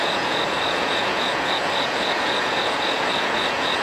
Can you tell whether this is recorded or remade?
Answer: remade